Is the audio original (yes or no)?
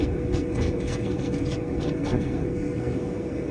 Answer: no